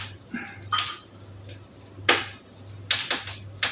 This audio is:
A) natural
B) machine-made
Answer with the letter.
A